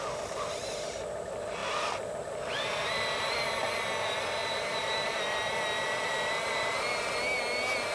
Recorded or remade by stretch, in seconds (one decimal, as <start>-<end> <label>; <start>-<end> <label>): 0.0-1.6 recorded; 1.6-3.5 remade; 3.5-4.4 recorded; 4.4-5.2 remade; 5.2-7.9 recorded